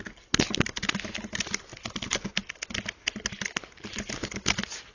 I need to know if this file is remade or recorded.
recorded